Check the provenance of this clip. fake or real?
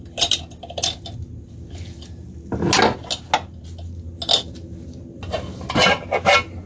real